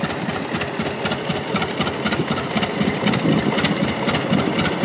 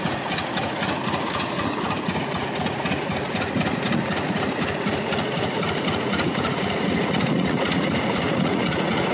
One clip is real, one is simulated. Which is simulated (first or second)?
second